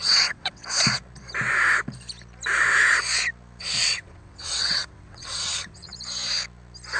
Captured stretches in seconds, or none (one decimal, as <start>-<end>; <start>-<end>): 0.6-3.6; 5.9-7.0